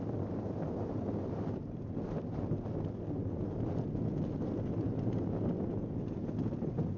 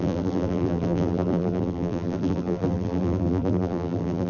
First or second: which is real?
first